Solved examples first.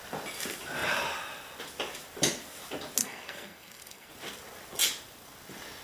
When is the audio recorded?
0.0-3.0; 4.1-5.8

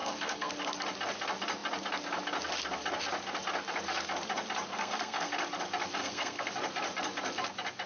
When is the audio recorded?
0.5-4.7; 5.3-6.0; 6.5-7.9

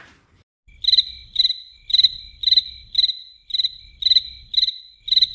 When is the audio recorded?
0.0-5.3

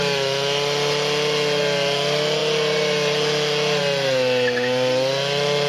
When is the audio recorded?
0.0-5.7

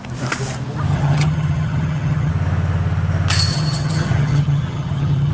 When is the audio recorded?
0.0-0.9; 2.3-3.5

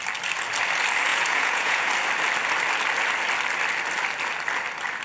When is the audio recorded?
0.0-1.1; 1.9-5.0

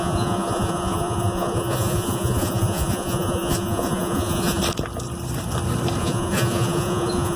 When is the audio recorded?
4.6-6.0